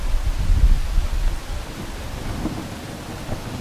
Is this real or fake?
real